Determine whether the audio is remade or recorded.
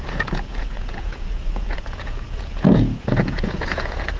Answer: remade